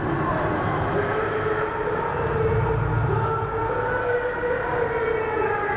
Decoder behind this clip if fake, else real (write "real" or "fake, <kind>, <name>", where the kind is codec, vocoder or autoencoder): real